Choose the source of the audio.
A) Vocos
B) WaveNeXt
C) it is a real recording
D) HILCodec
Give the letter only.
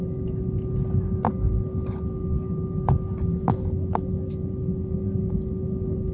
C